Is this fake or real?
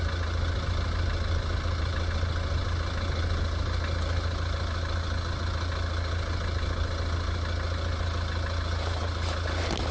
real